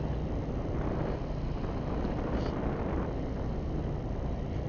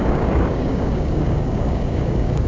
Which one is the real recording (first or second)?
first